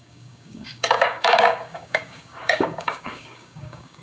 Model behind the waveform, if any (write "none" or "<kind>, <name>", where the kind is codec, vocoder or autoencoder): codec, DAC